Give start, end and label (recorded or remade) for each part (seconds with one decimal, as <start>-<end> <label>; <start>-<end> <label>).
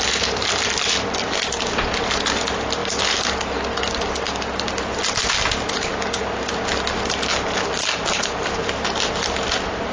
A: 0.0-9.9 recorded